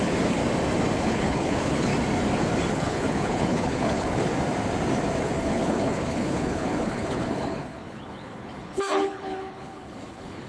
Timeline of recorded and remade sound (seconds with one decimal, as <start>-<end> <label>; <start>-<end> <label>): 0.0-0.4 remade; 0.4-1.0 recorded; 1.0-1.9 remade; 1.9-2.7 recorded; 2.7-4.3 remade; 4.3-5.2 recorded; 5.2-10.5 remade